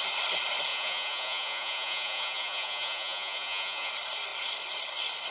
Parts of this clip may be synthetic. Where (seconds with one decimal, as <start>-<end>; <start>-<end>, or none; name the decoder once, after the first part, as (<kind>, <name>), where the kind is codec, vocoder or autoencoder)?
0.7-3.9 (vocoder, Vocos)